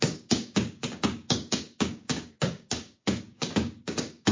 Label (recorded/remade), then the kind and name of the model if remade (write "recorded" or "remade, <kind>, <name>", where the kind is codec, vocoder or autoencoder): remade, codec, DAC